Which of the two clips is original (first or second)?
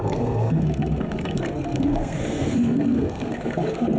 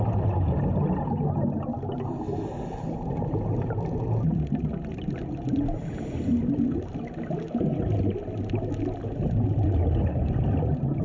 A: second